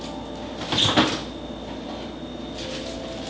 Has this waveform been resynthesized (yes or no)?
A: no